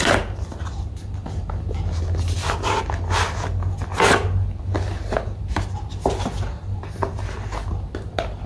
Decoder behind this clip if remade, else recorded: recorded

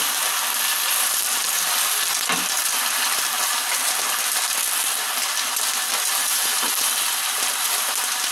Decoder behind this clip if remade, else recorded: recorded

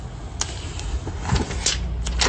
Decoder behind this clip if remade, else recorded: recorded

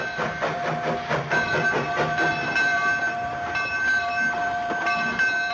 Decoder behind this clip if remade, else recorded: recorded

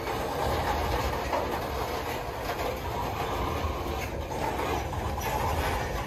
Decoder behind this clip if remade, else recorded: recorded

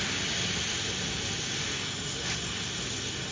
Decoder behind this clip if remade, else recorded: recorded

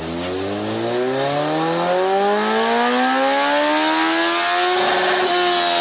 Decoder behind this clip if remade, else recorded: recorded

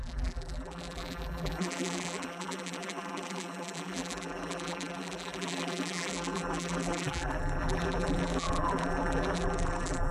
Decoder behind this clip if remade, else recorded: remade, vocoder, BigVGAN v2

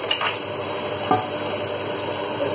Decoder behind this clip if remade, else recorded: recorded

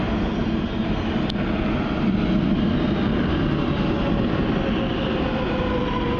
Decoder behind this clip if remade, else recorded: recorded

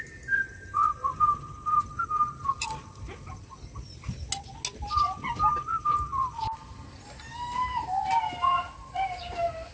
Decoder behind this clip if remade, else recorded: recorded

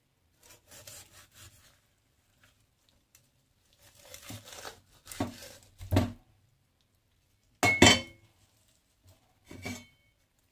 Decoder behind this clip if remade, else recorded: recorded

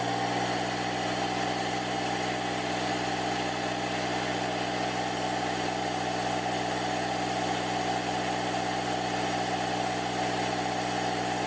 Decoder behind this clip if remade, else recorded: recorded